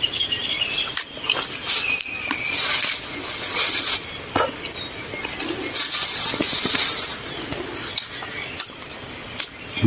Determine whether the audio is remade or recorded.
recorded